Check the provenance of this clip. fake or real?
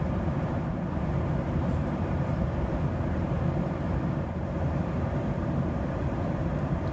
fake